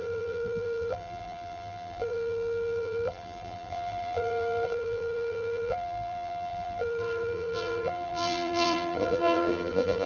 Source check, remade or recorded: remade